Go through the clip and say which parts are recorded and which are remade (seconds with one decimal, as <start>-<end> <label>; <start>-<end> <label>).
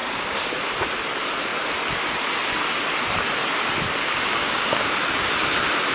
0.0-0.5 remade; 0.5-4.0 recorded; 4.0-4.9 remade; 4.9-5.9 recorded